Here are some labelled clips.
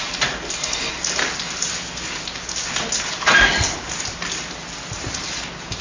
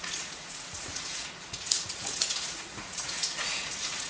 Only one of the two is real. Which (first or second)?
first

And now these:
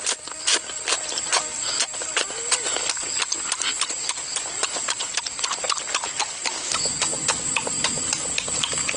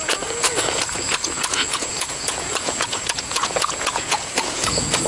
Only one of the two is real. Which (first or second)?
first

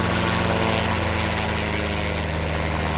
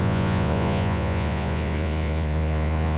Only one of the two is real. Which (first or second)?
first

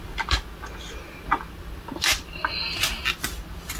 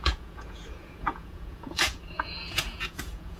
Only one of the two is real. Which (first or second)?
first